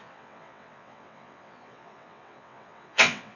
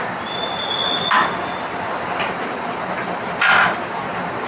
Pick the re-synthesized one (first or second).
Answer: first